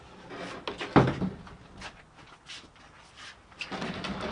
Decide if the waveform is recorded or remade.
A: recorded